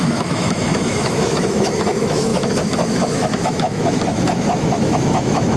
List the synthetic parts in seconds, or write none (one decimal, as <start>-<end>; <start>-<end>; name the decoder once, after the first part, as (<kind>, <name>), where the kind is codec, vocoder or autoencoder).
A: 0.0-5.6 (autoencoder, DAC-VAE)